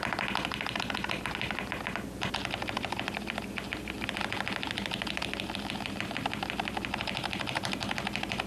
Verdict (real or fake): real